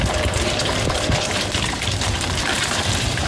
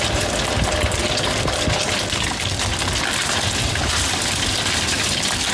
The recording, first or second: second